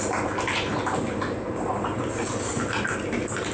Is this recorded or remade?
recorded